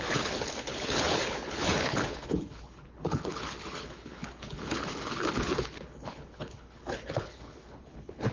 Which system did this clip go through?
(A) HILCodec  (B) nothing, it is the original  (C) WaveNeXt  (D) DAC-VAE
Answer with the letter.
A